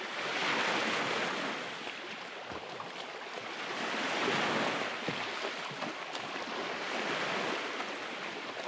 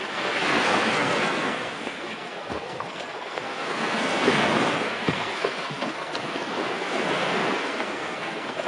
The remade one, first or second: second